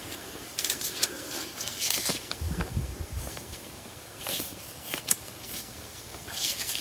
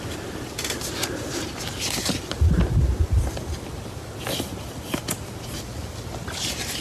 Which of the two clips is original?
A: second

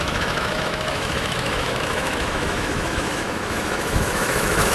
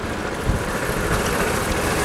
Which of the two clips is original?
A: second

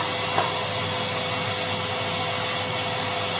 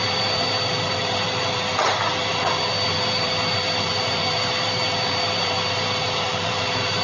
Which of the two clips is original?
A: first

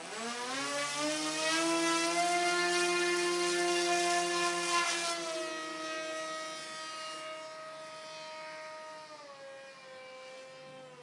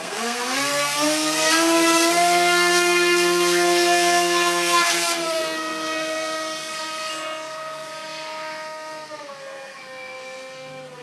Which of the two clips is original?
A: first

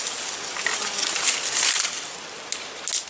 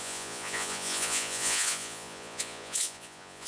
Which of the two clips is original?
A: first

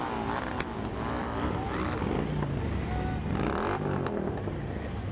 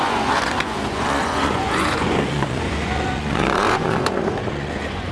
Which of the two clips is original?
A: first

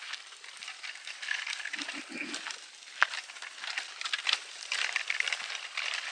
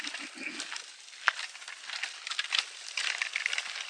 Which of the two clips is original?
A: second